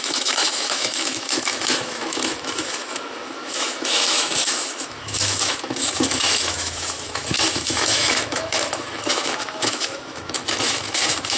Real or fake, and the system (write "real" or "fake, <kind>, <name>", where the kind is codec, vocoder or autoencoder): fake, autoencoder, DAC-VAE